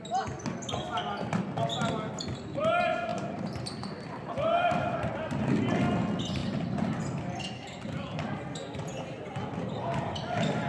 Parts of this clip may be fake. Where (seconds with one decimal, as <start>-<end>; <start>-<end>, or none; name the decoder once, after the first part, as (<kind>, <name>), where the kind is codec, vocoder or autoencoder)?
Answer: 3.1-5.1 (vocoder, BigVGAN v2)